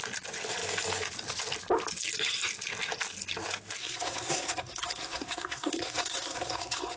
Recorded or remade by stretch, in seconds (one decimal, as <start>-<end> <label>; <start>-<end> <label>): 0.0-3.8 recorded; 3.8-7.0 remade